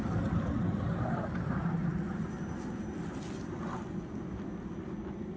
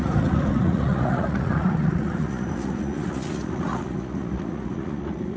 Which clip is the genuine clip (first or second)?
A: first